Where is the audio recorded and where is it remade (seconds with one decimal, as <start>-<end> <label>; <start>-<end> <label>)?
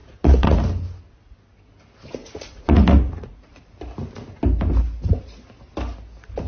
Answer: 0.0-0.6 remade; 0.6-2.2 recorded; 2.2-3.6 remade; 3.6-6.5 recorded